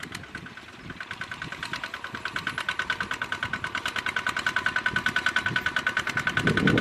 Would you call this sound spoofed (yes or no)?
no